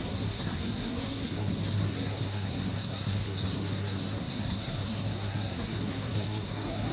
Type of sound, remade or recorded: remade